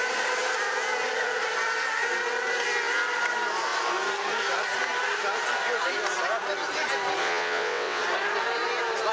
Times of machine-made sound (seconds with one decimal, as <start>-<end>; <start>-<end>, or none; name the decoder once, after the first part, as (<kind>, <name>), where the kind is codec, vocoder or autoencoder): 7.2-8.0 (vocoder, WaveNeXt)